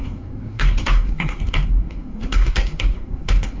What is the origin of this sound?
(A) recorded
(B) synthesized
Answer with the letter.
B